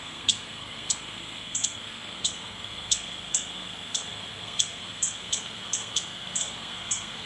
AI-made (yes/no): yes